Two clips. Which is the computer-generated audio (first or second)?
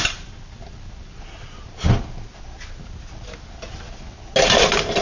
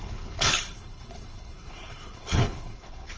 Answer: second